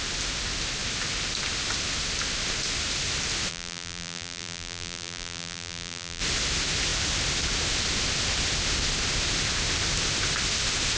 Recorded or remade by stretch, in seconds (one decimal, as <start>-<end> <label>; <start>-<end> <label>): 0.0-3.5 recorded; 3.5-6.2 remade; 6.2-11.0 recorded